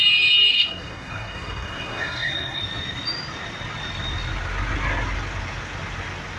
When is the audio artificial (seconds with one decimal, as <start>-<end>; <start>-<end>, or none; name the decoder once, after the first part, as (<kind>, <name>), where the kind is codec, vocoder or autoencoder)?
0.5-2.6 (codec, SNAC)